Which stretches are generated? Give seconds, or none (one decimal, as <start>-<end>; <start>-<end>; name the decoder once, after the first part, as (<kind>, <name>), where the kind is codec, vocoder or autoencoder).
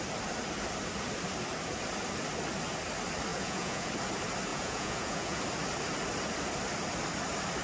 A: 3.3-3.9 (vocoder, Vocos); 4.5-5.4